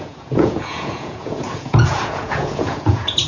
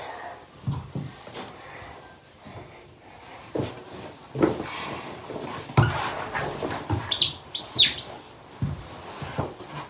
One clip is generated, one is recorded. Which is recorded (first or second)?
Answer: second